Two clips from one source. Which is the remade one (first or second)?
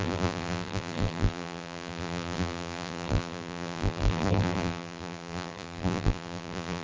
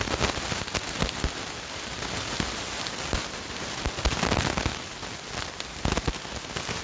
first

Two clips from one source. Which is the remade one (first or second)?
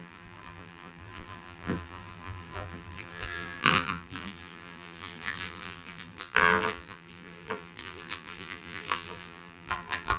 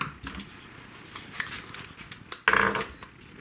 first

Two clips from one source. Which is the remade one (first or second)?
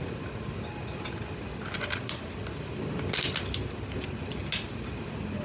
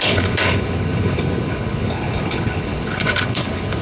second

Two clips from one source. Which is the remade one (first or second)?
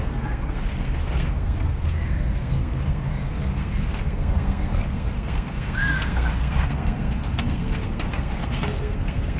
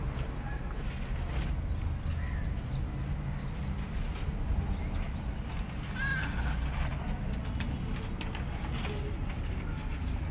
first